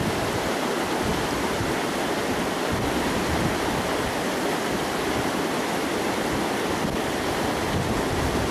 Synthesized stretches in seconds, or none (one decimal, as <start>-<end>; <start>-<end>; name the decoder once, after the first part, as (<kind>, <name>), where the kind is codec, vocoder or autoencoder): none